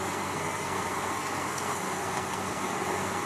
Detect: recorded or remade remade